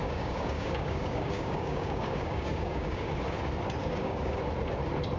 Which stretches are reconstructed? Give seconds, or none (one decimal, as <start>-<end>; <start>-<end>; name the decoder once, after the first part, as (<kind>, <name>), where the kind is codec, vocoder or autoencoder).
0.0-3.1 (codec, DAC); 3.8-4.4